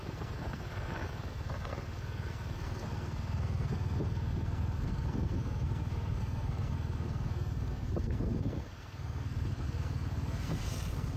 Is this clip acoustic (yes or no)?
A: no